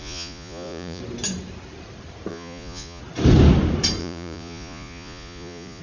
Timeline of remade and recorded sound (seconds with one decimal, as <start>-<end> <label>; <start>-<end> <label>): 0.0-1.0 remade; 1.0-2.3 recorded; 2.3-3.0 remade; 3.0-4.0 recorded; 4.0-5.8 remade